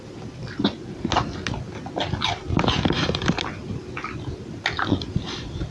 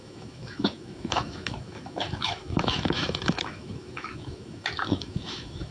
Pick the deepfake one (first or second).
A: second